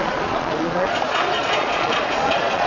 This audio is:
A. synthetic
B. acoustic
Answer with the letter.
A